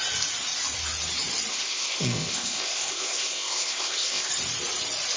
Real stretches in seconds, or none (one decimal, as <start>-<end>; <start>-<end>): 0.0-1.5; 4.3-5.2